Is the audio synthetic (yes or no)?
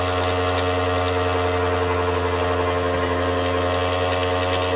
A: no